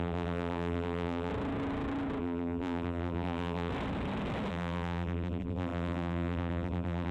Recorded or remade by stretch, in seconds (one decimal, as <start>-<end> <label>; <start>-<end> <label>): 0.0-1.3 remade; 1.3-2.2 recorded; 2.2-3.7 remade; 3.7-4.5 recorded; 4.5-7.1 remade